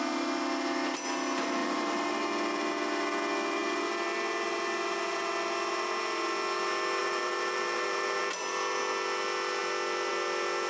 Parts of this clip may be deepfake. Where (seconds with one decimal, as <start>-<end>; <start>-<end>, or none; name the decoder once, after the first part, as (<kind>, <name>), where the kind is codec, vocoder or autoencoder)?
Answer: 1.6-2.2 (vocoder, BigVGAN v2); 7.0-8.2